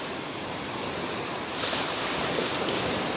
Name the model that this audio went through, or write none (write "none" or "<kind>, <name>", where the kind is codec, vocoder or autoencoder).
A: vocoder, BigVGAN v2